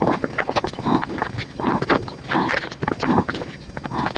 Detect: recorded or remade recorded